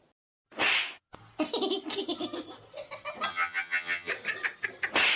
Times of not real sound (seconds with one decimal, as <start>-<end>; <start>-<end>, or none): 3.3-4.1